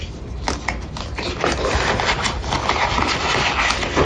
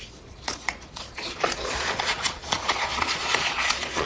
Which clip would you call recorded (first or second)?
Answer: first